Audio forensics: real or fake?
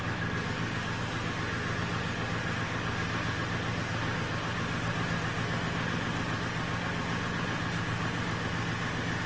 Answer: real